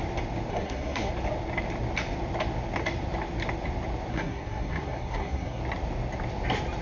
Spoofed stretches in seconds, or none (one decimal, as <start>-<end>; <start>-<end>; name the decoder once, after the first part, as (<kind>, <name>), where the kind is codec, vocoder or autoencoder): 0.5-1.1 (codec, SNAC); 4.1-5.6